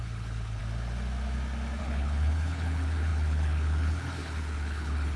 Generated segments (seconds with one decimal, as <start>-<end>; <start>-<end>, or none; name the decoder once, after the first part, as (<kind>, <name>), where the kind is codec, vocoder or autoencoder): 0.0-0.6 (codec, HILCodec); 1.8-5.2